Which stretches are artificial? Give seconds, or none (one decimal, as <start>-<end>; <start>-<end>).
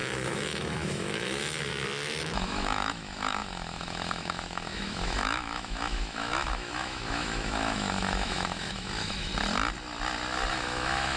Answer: 0.0-1.7; 2.2-9.3; 10.5-11.2